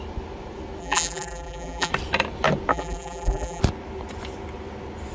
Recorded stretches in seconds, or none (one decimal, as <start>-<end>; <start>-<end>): 0.0-0.8; 1.9-2.7; 3.6-5.1